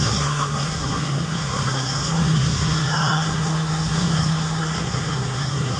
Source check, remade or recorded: remade